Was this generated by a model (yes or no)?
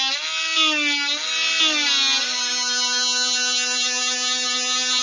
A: no